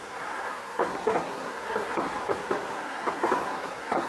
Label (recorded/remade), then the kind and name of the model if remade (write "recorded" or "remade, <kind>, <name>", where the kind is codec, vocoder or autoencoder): remade, codec, SNAC